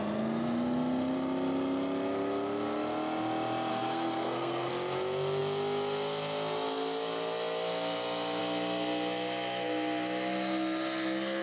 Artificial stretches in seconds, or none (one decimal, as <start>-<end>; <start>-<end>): 3.7-4.7